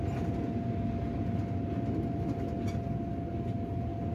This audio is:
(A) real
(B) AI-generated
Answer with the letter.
A